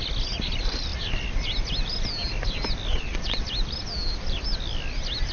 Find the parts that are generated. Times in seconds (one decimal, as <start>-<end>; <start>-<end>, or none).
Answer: 2.9-3.4